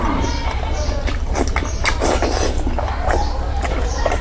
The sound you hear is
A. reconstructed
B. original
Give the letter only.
B